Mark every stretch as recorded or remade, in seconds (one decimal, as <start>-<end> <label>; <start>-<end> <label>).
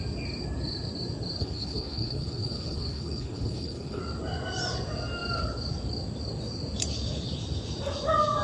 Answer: 0.0-1.4 recorded; 1.4-4.0 remade; 4.0-8.4 recorded